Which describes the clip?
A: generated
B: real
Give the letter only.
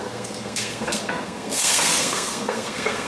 A